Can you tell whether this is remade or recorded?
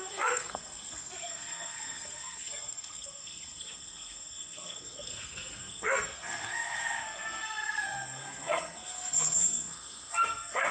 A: remade